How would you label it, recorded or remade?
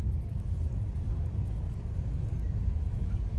remade